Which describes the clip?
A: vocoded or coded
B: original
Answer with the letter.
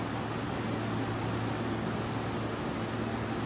B